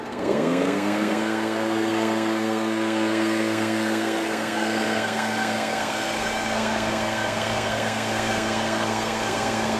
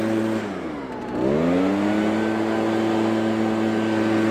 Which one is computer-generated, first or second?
first